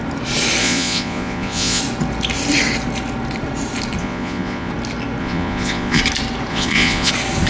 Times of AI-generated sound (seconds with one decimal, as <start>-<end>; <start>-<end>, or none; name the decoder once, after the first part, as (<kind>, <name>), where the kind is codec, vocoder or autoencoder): 0.6-1.8 (vocoder, Vocos); 4.0-4.7; 5.2-6.0; 6.5-7.1